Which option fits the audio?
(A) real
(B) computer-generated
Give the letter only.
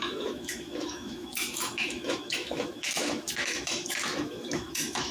B